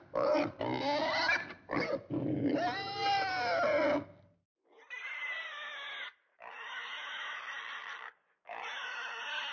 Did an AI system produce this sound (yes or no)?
no